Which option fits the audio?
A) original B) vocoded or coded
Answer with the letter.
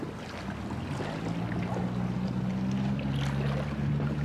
A